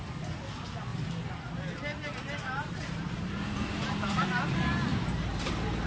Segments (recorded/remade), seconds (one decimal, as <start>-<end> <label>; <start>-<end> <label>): 0.0-0.9 recorded; 0.9-4.4 remade; 4.4-4.9 recorded; 4.9-5.5 remade; 5.5-5.9 recorded